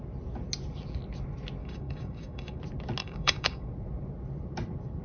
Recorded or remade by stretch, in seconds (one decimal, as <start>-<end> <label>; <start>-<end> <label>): 0.0-1.6 recorded; 1.6-2.6 remade; 2.6-3.0 recorded; 3.0-3.7 remade; 3.7-5.0 recorded